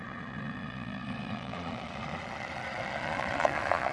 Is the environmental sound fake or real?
fake